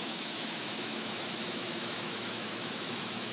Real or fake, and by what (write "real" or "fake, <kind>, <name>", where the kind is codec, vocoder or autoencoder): fake, autoencoder, DAC-VAE